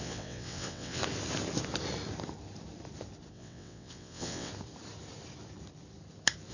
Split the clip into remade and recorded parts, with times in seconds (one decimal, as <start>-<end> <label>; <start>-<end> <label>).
0.0-1.0 remade; 1.0-3.3 recorded; 3.3-4.5 remade; 4.5-6.5 recorded